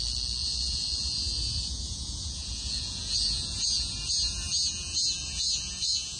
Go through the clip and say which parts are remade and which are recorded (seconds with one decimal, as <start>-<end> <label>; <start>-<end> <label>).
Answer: 0.0-0.4 recorded; 0.4-4.1 remade; 4.1-5.2 recorded; 5.2-6.2 remade